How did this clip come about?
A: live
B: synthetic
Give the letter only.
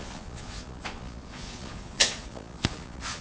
B